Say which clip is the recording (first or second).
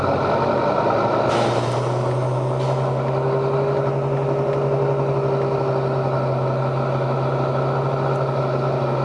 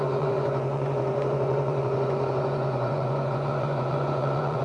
first